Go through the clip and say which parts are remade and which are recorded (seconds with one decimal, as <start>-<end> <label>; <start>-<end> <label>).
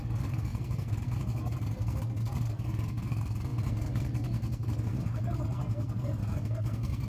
0.0-7.1 remade